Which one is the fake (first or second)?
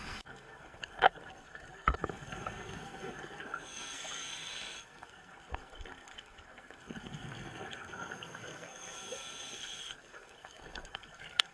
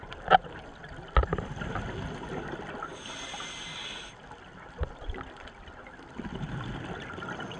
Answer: first